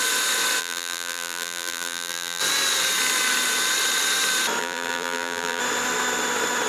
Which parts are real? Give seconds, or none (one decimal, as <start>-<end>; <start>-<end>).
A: 0.0-0.6; 2.4-4.6; 5.6-6.7